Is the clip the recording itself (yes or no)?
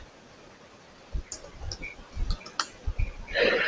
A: yes